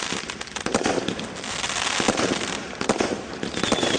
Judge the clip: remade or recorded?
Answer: recorded